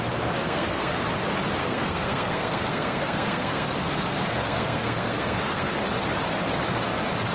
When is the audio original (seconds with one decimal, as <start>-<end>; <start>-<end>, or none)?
0.0-0.4; 1.0-1.6; 5.8-7.3